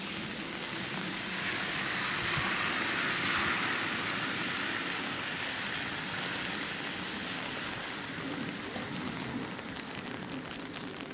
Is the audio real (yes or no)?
yes